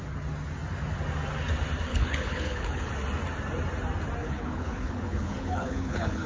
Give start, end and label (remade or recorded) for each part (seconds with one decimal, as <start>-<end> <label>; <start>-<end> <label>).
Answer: 0.0-1.9 recorded; 1.9-2.9 remade; 2.9-4.2 recorded; 4.2-6.3 remade